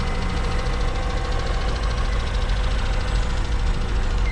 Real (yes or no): no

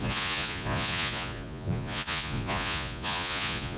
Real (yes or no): no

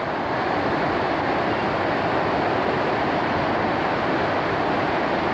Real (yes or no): yes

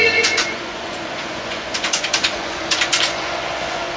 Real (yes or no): no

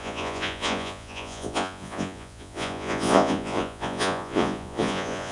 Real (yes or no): no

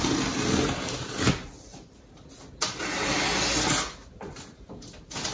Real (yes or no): yes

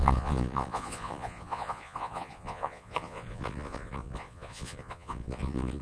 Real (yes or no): no